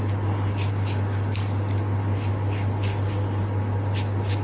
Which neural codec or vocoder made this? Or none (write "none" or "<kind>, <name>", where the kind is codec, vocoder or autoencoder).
none